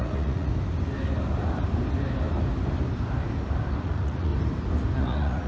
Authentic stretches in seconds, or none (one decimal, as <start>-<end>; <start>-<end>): 0.5-3.8; 4.3-5.0